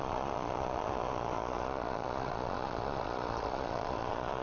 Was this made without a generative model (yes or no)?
no